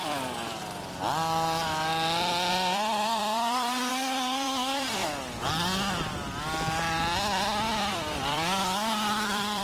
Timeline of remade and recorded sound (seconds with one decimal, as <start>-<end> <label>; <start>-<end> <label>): 0.0-0.6 remade; 0.6-2.5 recorded; 2.5-5.0 remade; 5.0-7.8 recorded; 7.8-9.6 remade